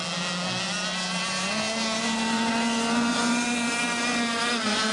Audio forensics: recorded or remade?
recorded